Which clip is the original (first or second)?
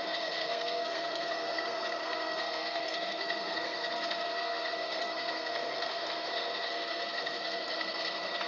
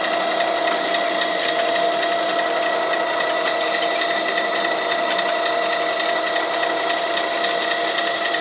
second